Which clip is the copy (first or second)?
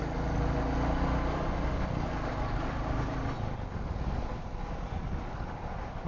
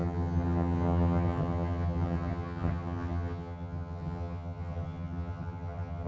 second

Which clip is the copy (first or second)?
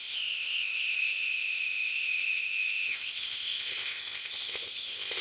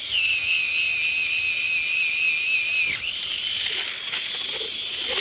first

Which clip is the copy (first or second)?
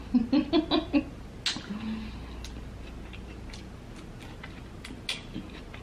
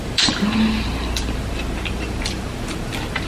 second